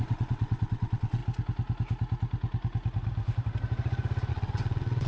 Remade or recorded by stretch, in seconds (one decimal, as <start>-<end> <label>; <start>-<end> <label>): 0.0-1.2 remade; 1.2-4.3 recorded; 4.3-5.1 remade